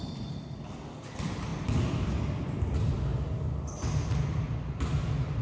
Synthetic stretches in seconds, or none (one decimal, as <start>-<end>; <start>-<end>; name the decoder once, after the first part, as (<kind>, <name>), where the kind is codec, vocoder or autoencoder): none